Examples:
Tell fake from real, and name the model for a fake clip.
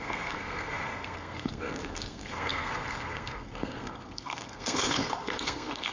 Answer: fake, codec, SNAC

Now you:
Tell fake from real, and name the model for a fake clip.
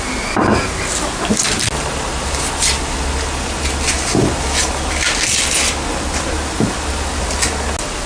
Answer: real